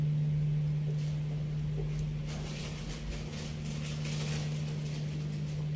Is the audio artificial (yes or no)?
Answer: no